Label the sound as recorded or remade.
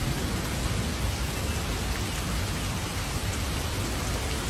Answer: recorded